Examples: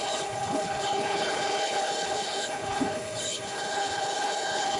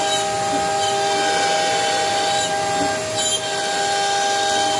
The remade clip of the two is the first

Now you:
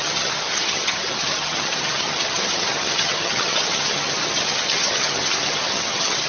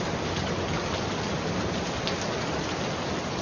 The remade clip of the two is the first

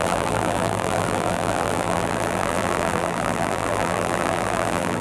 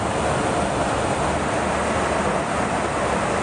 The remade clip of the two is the first